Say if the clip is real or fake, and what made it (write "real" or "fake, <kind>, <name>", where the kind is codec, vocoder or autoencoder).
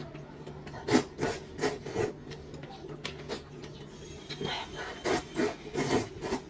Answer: real